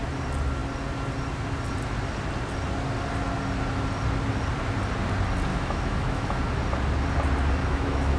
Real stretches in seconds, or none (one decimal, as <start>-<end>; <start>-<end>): 0.0-5.5; 6.4-7.6